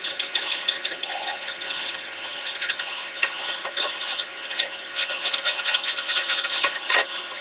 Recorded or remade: remade